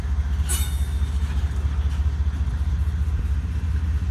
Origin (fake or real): real